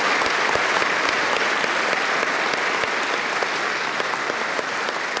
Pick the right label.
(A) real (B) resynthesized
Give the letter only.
A